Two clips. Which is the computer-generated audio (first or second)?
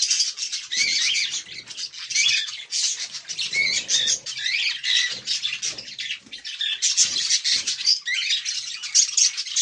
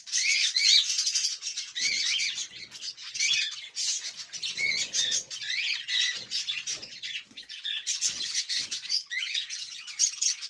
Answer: second